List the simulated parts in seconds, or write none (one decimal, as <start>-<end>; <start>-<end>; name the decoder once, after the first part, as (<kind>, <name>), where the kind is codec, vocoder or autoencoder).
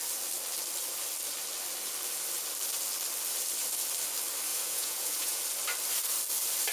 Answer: 4.5-5.4 (vocoder, Vocos)